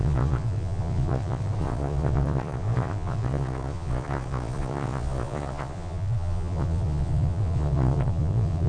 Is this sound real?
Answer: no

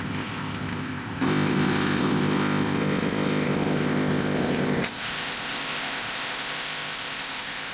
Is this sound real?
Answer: no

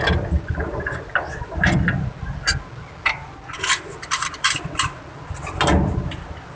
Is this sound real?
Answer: yes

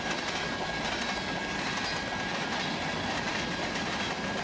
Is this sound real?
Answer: yes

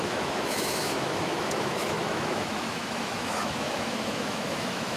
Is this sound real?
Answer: no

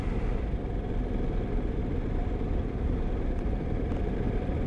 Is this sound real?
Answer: yes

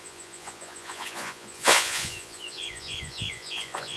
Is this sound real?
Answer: no